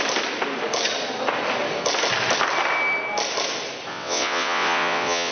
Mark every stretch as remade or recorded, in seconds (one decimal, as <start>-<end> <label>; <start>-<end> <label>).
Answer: 0.0-3.9 recorded; 3.9-5.3 remade